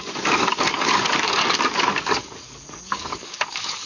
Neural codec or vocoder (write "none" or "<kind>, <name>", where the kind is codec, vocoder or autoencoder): codec, DAC